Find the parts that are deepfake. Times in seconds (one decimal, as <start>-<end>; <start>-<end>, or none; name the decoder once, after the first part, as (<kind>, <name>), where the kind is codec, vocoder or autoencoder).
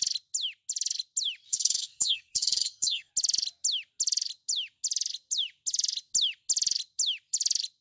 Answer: 1.5-3.1 (codec, SNAC)